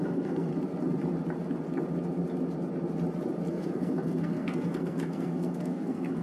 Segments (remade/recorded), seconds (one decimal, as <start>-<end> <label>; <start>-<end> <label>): 0.0-0.5 remade; 0.5-3.5 recorded; 3.5-6.2 remade